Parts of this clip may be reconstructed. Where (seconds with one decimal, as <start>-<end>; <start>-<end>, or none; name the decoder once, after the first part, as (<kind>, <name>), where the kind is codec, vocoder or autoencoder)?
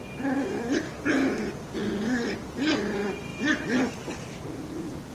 none